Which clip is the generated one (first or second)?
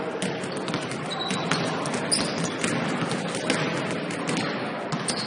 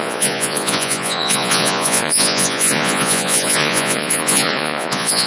second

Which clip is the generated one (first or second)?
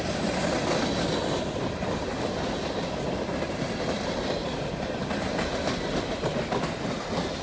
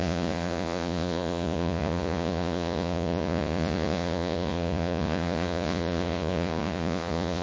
second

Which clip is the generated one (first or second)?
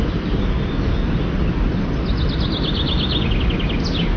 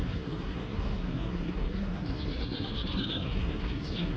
second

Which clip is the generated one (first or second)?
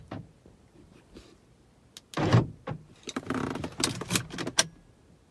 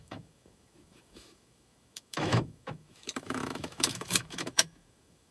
second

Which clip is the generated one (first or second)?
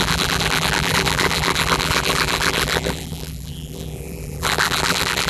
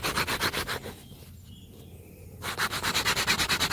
first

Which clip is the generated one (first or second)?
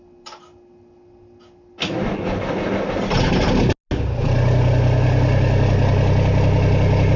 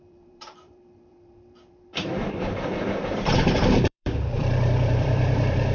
second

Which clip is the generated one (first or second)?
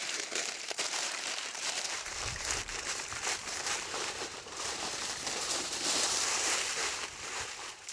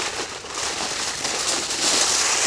first